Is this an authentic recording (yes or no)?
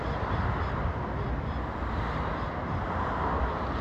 yes